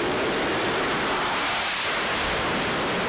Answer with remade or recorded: recorded